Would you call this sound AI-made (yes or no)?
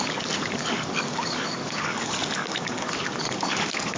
yes